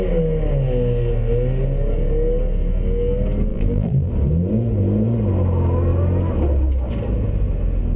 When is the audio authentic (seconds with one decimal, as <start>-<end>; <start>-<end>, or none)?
0.0-3.5; 4.1-8.0